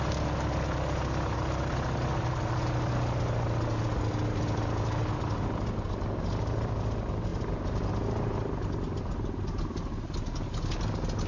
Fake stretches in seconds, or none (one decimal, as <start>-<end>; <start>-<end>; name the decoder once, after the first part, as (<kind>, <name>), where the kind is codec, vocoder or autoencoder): none